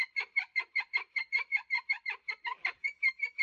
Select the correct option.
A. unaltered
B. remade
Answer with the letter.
B